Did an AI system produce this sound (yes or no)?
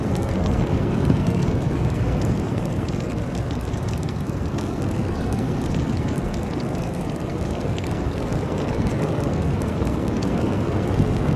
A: yes